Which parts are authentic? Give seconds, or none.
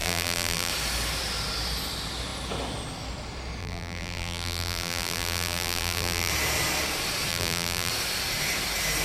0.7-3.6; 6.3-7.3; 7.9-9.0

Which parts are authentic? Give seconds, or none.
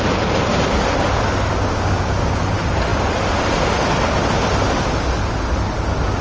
0.0-1.5; 2.4-6.2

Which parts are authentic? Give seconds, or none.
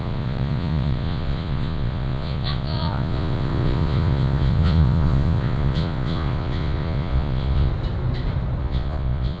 7.7-8.6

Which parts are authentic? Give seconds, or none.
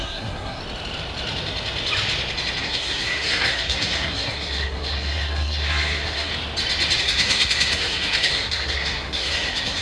0.6-2.6; 6.3-7.0